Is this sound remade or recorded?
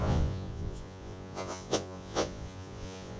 remade